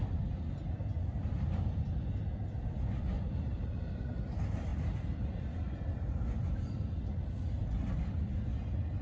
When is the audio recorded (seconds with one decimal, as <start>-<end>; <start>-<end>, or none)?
0.0-9.0